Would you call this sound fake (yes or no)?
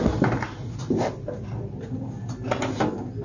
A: no